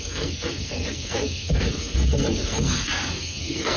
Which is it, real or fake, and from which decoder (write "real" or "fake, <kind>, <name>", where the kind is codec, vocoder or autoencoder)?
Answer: fake, codec, SNAC